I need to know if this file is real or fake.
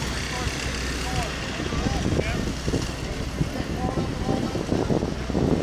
real